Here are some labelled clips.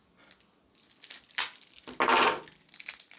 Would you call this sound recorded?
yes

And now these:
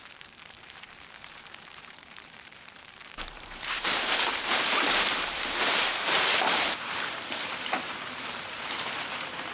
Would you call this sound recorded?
no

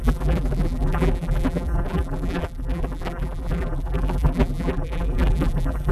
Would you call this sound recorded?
no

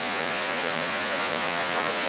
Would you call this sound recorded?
no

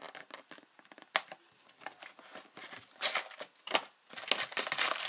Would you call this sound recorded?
yes